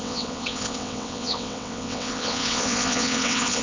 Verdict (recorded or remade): remade